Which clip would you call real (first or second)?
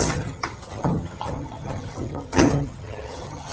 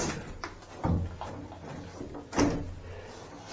second